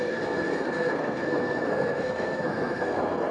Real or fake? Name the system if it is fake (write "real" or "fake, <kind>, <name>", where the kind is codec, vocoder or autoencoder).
fake, codec, SNAC